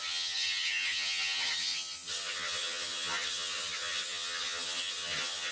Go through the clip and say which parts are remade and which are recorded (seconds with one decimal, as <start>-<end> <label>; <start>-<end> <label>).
0.0-5.5 remade